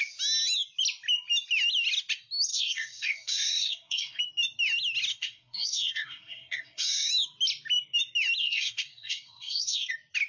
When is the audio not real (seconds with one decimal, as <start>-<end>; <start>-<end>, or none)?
2.5-4.2; 5.1-7.1; 8.4-9.9